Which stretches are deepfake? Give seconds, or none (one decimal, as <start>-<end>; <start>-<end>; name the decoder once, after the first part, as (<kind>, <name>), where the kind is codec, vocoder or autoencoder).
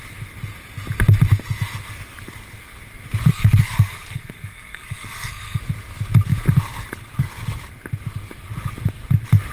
3.3-5.6 (codec, SNAC)